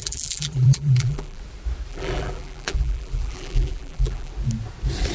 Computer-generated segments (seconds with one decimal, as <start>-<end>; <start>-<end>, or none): 0.0-1.4; 1.9-4.3